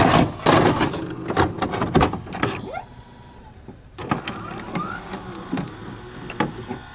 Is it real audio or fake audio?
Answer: real